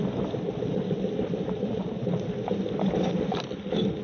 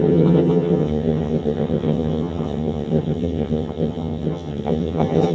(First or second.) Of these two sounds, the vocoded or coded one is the second